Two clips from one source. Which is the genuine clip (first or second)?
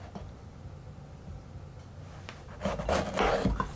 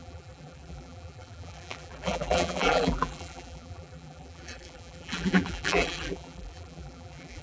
first